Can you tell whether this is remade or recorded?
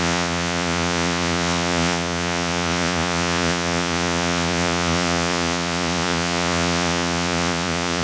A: remade